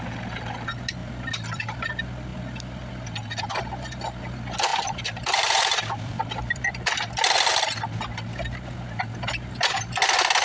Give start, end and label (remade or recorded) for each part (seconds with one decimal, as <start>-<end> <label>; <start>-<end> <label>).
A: 0.0-1.0 recorded; 1.0-1.9 remade; 1.9-4.7 recorded; 4.7-6.8 remade; 6.8-10.4 recorded